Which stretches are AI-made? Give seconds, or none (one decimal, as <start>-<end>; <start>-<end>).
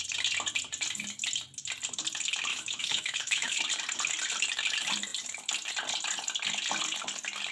2.5-3.6